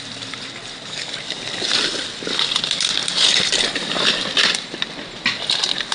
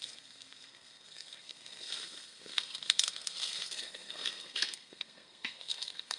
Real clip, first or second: first